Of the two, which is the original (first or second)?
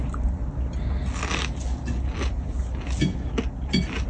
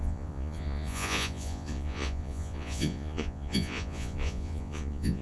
first